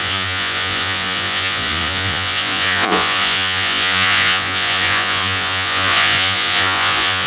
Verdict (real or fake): fake